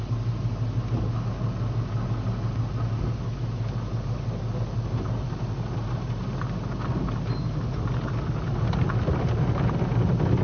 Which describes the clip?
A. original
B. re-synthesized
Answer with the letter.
A